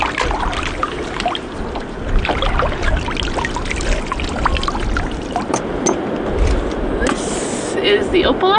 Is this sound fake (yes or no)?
no